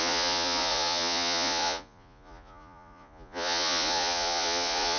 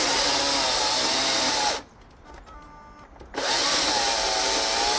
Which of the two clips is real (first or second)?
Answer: second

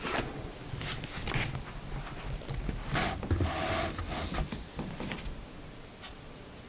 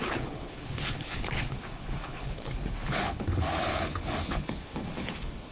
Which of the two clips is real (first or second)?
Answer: first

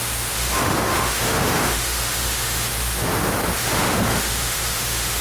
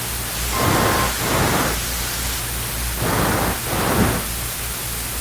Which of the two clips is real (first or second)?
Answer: second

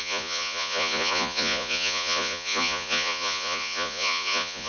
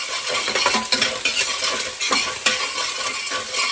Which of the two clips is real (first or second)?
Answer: second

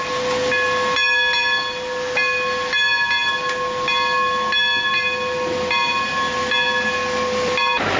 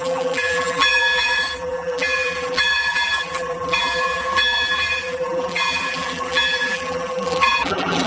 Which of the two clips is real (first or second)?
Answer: first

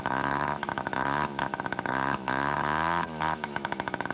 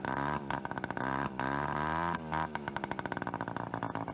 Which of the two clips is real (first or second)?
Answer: second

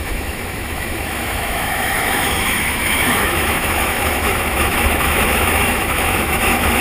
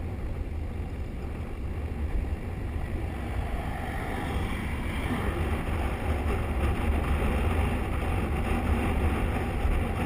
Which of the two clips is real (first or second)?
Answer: second